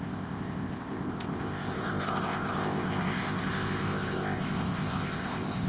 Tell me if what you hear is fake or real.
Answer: fake